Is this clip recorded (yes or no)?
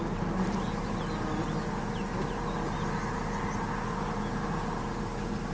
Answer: yes